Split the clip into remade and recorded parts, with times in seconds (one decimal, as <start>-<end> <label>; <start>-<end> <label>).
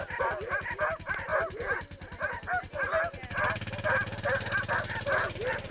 0.0-5.7 recorded